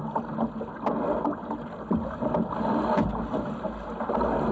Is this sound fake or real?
real